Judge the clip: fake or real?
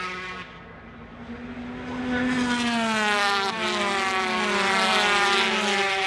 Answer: real